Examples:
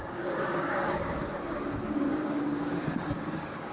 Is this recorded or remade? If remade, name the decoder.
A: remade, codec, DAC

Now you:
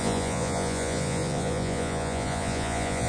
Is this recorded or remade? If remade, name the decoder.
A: remade, vocoder, Vocos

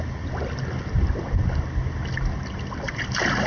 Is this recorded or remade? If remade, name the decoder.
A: recorded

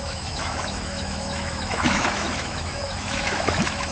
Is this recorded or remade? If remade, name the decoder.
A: remade, autoencoder, DAC-VAE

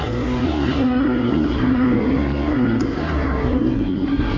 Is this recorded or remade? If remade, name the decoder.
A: remade, codec, SNAC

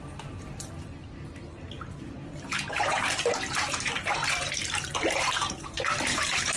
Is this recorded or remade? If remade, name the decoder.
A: remade, vocoder, BigVGAN v2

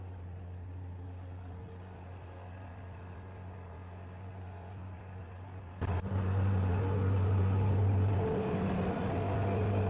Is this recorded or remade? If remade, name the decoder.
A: recorded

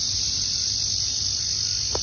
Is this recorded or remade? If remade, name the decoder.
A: recorded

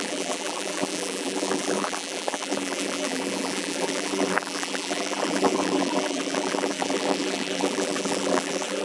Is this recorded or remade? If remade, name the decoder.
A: remade, vocoder, BigVGAN v2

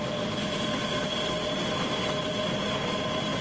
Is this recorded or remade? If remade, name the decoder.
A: recorded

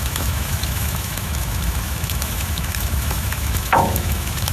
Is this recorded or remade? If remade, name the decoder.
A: remade, autoencoder, DAC-VAE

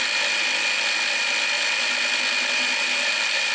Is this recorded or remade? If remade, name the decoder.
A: recorded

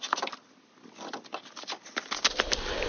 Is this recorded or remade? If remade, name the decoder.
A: recorded